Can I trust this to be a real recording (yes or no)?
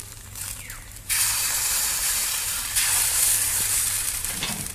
no